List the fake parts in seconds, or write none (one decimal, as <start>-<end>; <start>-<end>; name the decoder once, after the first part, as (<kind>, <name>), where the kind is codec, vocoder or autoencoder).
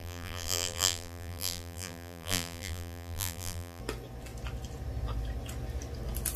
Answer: 0.0-3.8 (vocoder, BigVGAN v2)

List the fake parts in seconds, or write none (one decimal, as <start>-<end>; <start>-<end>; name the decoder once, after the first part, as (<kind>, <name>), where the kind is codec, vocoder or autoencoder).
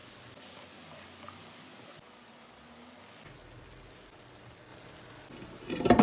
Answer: none